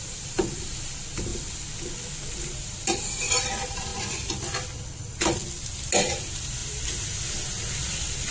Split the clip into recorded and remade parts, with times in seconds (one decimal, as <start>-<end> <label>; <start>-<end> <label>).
0.0-1.3 remade; 1.3-2.3 recorded; 2.3-3.9 remade; 3.9-5.0 recorded; 5.0-5.4 remade; 5.4-6.1 recorded; 6.1-6.6 remade; 6.6-7.6 recorded; 7.6-8.3 remade